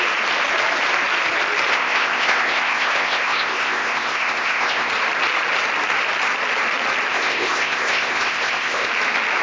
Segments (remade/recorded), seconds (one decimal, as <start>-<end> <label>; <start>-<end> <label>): 0.0-1.7 recorded; 1.7-4.9 remade; 4.9-7.1 recorded; 7.1-8.9 remade; 8.9-9.4 recorded

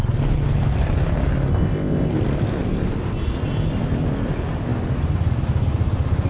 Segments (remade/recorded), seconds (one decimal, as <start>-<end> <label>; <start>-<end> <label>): 0.0-1.5 recorded; 1.5-2.1 remade; 2.1-6.3 recorded

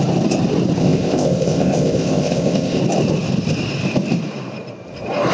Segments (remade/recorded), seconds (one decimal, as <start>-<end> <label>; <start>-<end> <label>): 0.0-0.8 recorded; 0.8-2.8 remade; 2.8-5.3 recorded

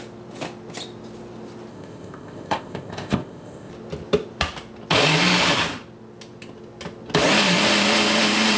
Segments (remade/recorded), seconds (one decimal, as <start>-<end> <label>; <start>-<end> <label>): 0.0-1.7 recorded; 1.7-3.7 remade; 3.7-8.6 recorded

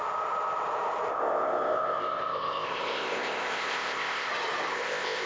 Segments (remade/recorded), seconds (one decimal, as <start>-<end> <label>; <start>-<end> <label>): 0.0-1.1 recorded; 1.1-4.3 remade; 4.3-4.7 recorded; 4.7-5.3 remade